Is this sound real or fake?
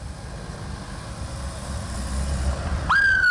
real